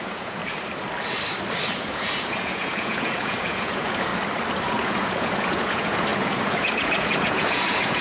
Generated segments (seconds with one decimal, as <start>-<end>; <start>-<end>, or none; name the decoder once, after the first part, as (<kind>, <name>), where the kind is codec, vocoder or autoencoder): 0.0-0.4 (vocoder, Vocos); 1.8-4.1; 4.6-8.0